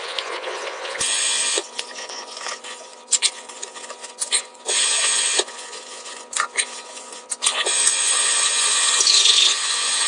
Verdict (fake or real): fake